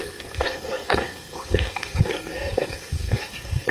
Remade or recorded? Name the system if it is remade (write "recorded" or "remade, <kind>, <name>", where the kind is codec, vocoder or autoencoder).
remade, codec, SNAC